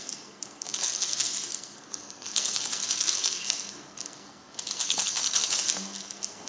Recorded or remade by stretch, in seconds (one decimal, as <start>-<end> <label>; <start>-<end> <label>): 0.0-6.5 remade